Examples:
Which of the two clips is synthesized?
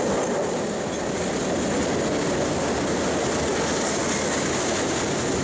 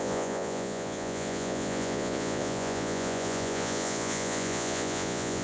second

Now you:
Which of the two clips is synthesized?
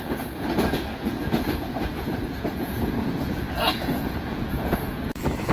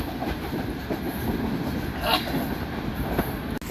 first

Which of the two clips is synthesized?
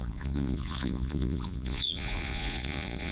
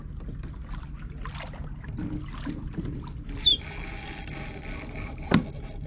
first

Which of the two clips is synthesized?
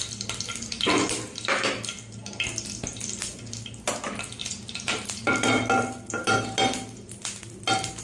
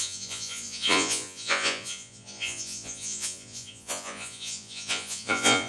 second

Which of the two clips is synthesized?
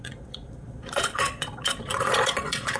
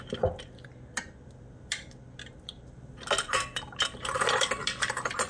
first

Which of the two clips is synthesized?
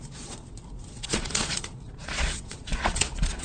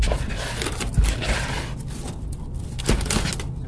first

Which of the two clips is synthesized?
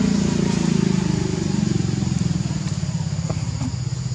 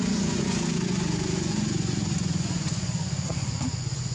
second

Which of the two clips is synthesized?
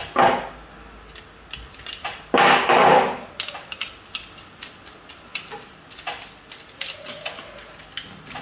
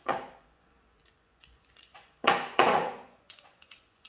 second